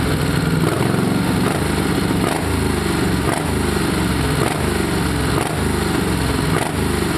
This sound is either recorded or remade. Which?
recorded